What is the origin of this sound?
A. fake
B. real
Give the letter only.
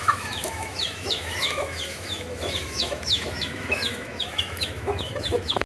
A